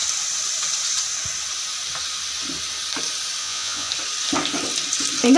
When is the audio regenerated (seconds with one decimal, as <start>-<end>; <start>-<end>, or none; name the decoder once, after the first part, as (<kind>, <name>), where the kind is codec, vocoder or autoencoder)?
3.4-3.9 (vocoder, Vocos)